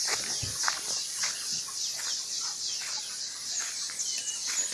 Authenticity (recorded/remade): recorded